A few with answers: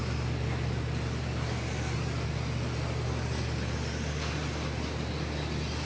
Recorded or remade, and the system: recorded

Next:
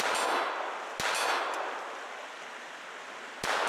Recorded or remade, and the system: recorded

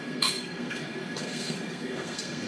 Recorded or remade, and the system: remade, codec, SNAC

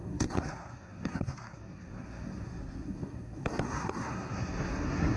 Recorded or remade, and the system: remade, codec, SNAC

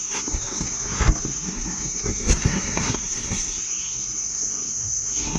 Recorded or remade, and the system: remade, codec, SNAC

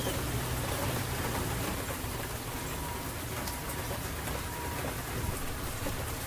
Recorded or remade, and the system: recorded